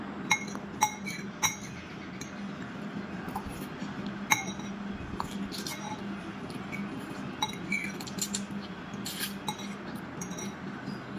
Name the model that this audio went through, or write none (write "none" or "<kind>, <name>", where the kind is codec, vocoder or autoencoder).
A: none